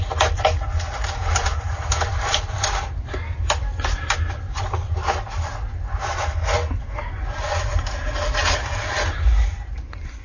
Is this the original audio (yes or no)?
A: yes